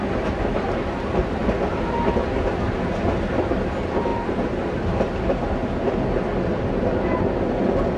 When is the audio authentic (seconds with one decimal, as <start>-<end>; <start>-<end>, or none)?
0.0-8.0